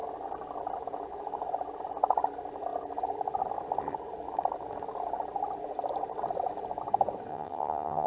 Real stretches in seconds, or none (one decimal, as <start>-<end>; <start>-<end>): 0.0-7.3